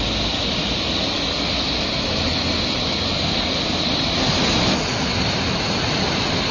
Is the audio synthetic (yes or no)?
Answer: no